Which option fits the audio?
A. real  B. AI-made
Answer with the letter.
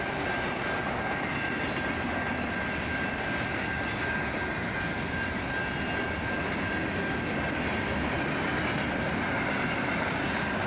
A